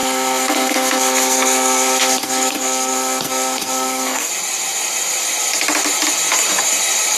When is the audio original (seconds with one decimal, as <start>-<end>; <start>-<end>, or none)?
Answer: 4.3-7.2